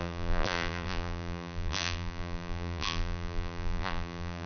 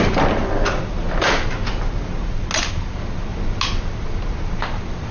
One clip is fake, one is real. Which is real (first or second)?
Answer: second